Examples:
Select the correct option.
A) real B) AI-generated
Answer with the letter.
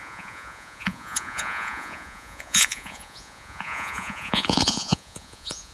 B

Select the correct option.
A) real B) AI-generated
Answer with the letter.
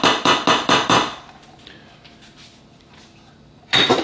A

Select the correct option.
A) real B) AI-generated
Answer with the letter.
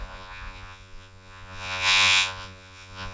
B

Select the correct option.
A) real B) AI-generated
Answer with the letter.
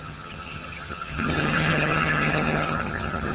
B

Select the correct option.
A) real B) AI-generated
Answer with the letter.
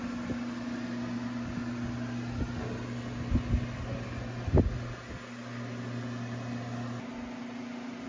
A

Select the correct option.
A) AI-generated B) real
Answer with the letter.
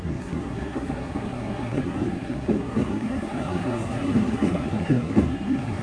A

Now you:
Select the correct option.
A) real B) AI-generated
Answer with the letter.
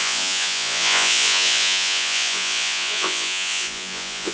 B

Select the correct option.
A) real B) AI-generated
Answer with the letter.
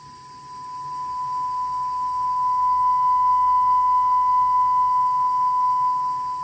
A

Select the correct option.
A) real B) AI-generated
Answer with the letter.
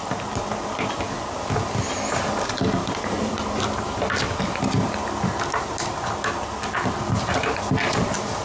A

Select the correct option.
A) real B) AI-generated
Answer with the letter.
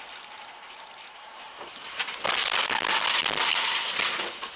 A